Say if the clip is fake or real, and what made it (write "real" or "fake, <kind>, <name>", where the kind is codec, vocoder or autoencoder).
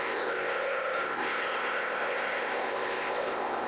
fake, codec, ZipCodec